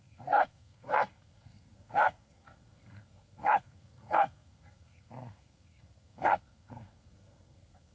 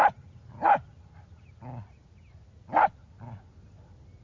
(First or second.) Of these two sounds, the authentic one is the second